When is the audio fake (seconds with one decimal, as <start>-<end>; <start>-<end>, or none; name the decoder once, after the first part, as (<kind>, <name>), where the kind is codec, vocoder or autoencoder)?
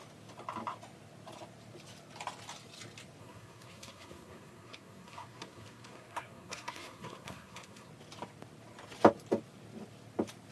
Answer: 3.2-7.9 (codec, SNAC)